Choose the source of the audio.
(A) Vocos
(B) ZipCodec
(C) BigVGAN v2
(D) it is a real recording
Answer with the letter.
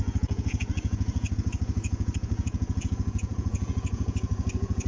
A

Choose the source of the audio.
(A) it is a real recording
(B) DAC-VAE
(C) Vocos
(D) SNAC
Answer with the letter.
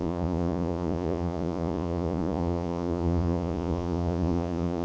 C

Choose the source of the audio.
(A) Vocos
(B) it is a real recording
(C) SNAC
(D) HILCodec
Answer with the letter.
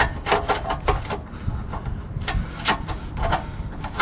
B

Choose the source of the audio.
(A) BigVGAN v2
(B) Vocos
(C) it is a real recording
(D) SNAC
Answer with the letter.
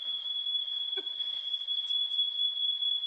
B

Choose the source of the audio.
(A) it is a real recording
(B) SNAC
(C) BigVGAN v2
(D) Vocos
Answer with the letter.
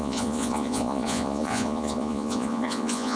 D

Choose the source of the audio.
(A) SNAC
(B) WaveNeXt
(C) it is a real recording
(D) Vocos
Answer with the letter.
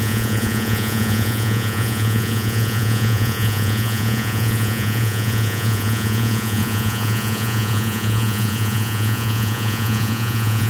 D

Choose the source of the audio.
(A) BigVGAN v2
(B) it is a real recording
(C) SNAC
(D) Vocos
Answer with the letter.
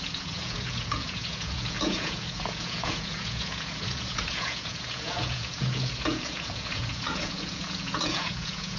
D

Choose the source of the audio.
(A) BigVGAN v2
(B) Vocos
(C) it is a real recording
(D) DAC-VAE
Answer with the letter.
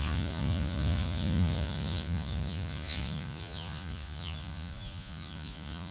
B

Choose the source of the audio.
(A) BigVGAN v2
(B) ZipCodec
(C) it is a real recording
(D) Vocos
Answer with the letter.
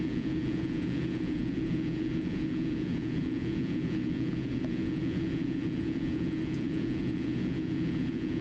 D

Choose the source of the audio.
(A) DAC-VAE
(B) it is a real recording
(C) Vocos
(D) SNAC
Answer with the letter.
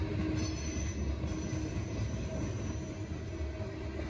B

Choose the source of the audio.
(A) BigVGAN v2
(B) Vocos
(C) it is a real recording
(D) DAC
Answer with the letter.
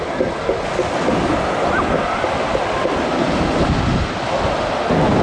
C